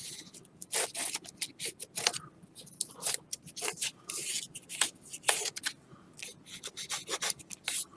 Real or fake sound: real